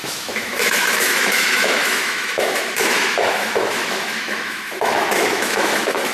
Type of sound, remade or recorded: remade